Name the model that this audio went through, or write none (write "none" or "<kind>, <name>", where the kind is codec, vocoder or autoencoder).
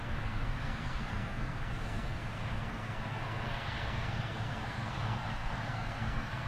codec, SNAC